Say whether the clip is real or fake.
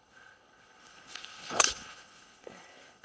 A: fake